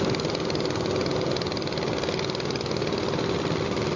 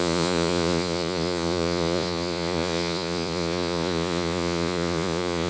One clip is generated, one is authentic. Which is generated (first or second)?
second